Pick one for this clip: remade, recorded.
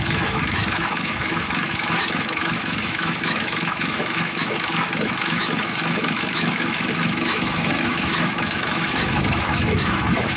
remade